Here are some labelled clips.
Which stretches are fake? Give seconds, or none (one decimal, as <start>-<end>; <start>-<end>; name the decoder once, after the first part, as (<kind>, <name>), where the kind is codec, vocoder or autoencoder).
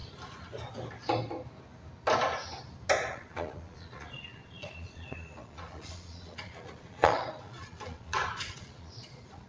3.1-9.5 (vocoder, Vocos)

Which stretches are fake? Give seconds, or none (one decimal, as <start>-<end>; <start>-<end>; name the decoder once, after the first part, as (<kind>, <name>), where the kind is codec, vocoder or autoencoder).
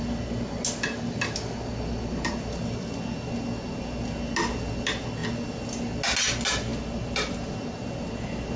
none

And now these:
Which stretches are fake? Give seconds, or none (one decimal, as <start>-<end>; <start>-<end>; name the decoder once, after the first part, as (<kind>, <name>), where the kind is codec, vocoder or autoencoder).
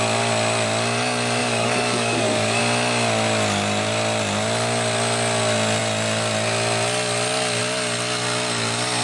1.4-2.6 (codec, DAC)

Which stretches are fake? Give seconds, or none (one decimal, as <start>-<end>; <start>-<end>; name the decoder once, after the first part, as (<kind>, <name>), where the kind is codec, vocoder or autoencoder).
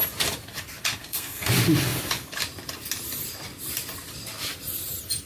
1.0-1.5 (codec, SNAC)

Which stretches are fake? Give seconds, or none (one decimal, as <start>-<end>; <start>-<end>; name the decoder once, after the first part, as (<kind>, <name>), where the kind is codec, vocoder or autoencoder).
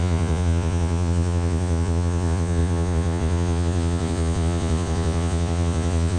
0.0-6.2 (vocoder, Vocos)